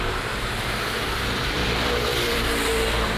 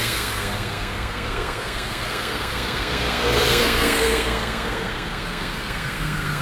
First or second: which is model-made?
second